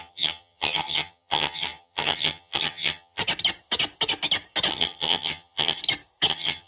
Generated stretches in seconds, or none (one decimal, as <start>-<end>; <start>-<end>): 0.0-3.2; 4.7-5.8; 6.3-6.7